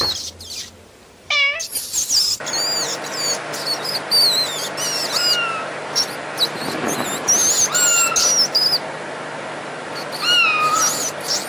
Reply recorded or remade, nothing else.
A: recorded